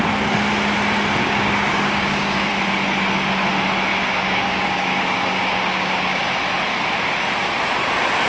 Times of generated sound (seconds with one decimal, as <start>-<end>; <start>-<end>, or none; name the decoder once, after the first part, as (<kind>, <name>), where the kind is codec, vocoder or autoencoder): 1.2-2.5 (codec, DAC); 3.9-6.2